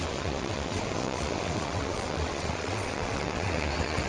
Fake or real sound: fake